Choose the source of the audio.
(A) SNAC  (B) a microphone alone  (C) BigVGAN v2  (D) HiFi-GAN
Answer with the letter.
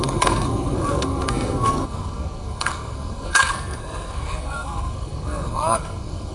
A